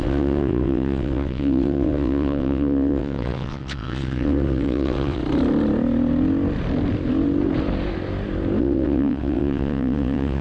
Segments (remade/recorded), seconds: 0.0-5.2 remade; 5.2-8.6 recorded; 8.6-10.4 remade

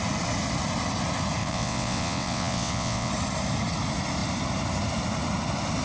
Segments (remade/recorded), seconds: 0.0-1.4 recorded; 1.4-3.1 remade; 3.1-5.8 recorded

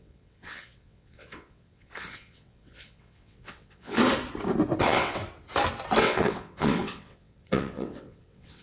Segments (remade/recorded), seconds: 0.0-4.0 remade; 4.0-4.8 recorded; 4.8-5.2 remade; 5.2-6.0 recorded; 6.0-8.6 remade

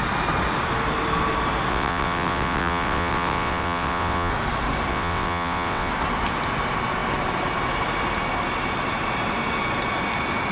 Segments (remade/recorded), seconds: 0.0-1.7 recorded; 1.7-4.3 remade; 4.3-4.9 recorded; 4.9-5.9 remade; 5.9-10.5 recorded

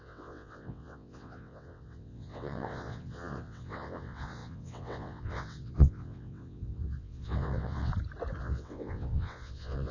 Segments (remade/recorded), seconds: 0.0-7.9 remade; 7.9-8.4 recorded; 8.4-9.9 remade